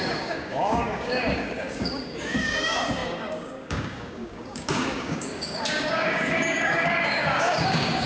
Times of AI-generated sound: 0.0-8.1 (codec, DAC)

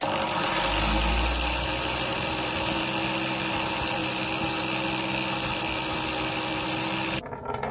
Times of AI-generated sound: 2.1-2.8 (vocoder, BigVGAN v2)